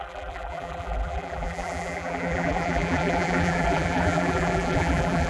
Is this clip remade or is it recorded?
remade